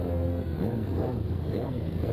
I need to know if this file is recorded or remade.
remade